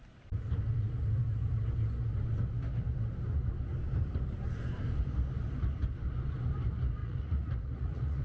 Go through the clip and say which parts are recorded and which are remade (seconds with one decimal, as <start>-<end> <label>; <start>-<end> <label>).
0.0-7.0 recorded; 7.0-8.2 remade

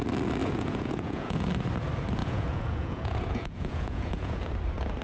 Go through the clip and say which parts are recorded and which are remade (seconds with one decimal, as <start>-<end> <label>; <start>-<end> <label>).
0.0-0.4 recorded; 0.4-1.5 remade; 1.5-2.2 recorded; 2.2-4.5 remade; 4.5-5.0 recorded